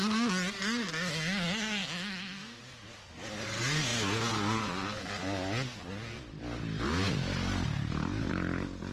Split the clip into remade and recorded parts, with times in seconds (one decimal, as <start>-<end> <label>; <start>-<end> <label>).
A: 0.0-1.8 recorded; 1.8-2.6 remade; 2.6-8.9 recorded